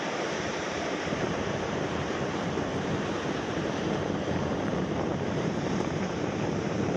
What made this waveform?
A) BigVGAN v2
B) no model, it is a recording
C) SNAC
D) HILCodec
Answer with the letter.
A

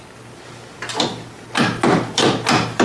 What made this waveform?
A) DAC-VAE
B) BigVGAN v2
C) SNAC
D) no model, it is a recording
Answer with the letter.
D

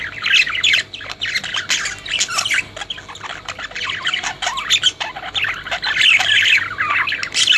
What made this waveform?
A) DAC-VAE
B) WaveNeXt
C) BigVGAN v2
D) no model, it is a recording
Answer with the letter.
D